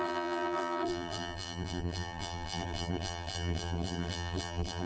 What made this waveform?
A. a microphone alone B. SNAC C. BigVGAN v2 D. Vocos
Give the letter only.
C